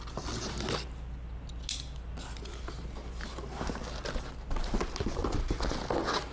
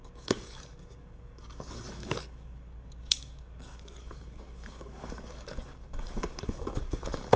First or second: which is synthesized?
second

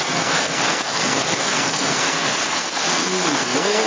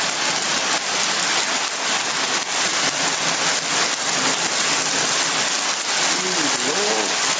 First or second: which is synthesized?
first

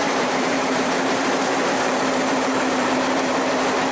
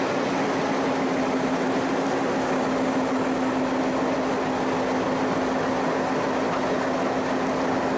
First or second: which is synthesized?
first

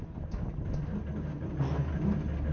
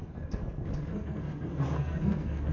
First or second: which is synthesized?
second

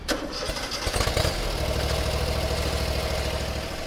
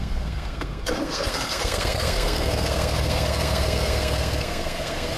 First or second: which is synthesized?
second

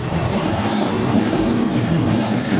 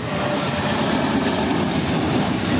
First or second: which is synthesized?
first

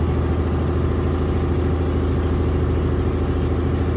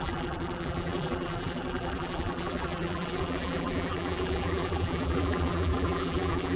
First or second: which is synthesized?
second